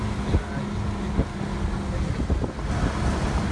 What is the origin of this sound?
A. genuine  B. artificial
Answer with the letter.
A